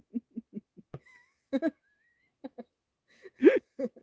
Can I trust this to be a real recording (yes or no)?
no